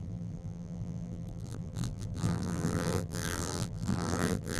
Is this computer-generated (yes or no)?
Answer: yes